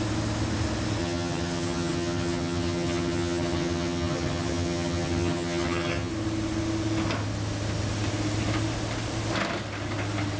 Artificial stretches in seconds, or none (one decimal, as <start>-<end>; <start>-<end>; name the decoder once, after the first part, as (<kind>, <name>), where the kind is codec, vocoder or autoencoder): 1.0-6.1 (vocoder, HiFi-GAN)